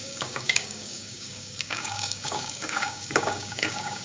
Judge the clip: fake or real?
fake